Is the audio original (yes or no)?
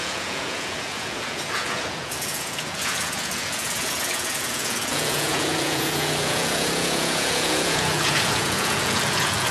no